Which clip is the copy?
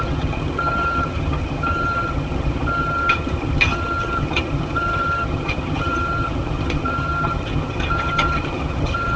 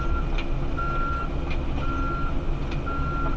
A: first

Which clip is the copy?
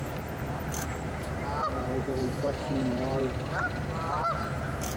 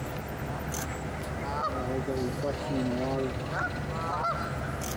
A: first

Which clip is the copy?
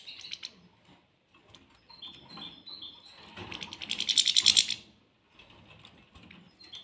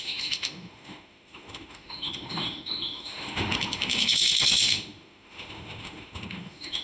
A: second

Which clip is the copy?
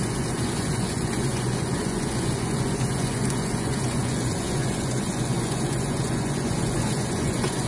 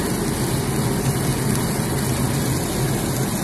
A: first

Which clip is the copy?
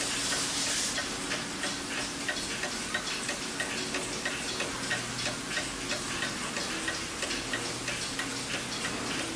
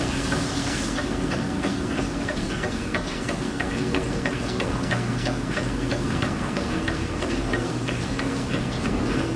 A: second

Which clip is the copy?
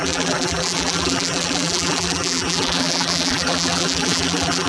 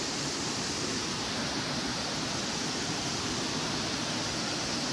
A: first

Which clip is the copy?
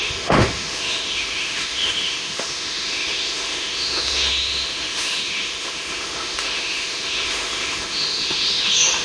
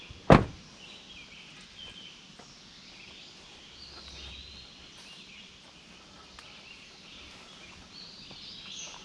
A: first